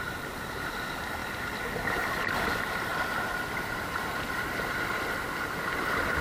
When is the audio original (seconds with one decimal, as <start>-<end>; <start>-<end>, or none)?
0.0-1.2; 1.9-2.9; 5.4-6.2